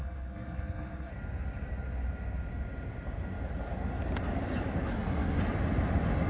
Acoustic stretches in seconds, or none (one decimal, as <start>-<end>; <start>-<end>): 1.1-4.9; 5.4-6.3